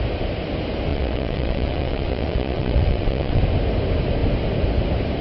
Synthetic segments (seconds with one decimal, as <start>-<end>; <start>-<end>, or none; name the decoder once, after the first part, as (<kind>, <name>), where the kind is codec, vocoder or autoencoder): 0.9-3.4 (vocoder, WaveNeXt)